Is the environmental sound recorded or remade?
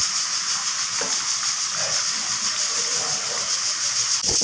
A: recorded